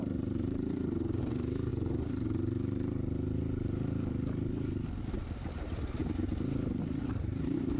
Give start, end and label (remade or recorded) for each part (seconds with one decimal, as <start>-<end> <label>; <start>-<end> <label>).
0.0-1.7 remade; 1.7-5.0 recorded; 5.0-6.0 remade; 6.0-7.1 recorded; 7.1-7.8 remade